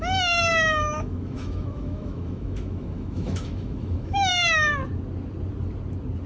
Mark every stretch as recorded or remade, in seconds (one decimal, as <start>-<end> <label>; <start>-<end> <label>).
0.0-4.8 remade; 4.8-6.3 recorded